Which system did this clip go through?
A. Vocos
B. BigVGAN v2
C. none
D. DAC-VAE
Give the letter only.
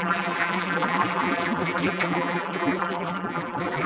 B